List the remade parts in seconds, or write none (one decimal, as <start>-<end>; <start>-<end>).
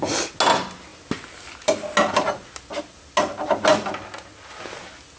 none